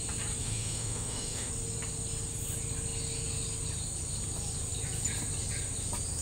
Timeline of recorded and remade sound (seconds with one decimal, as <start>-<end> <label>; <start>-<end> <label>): 0.0-0.4 recorded; 0.4-1.5 remade; 1.5-6.2 recorded